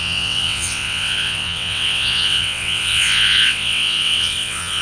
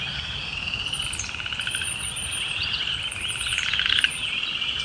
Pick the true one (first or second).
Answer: second